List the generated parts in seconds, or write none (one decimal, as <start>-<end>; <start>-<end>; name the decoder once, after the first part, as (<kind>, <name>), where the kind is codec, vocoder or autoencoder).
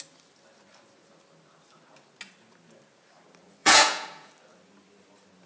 3.6-4.3 (vocoder, Vocos)